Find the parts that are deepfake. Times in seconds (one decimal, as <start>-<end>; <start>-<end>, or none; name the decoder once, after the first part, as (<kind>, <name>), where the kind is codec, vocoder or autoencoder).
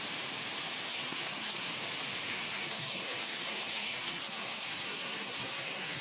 0.9-1.7 (codec, SNAC); 2.3-6.0